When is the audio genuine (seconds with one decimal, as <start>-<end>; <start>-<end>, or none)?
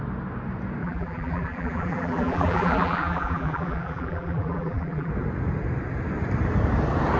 0.0-0.8; 5.1-7.2